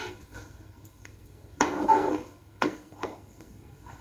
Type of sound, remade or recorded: remade